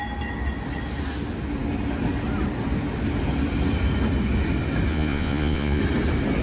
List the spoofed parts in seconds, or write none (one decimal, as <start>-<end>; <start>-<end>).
4.9-5.8

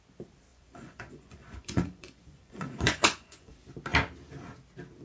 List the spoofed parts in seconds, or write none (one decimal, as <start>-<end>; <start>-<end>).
0.5-3.5